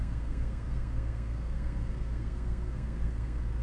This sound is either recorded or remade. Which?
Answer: remade